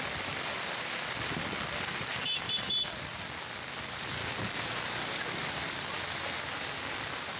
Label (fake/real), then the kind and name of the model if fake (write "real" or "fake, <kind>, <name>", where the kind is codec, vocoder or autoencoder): fake, vocoder, BigVGAN v2